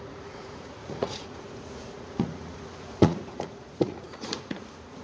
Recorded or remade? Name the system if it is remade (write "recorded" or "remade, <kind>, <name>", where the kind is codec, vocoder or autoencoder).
remade, vocoder, Vocos